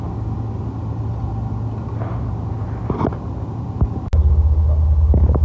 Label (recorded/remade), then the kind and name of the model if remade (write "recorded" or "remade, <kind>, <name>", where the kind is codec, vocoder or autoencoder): recorded